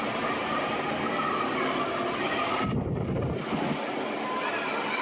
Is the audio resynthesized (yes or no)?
no